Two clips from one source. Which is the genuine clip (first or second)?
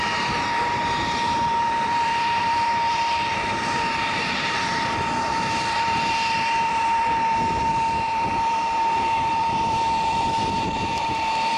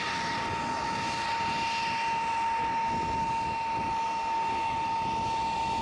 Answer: second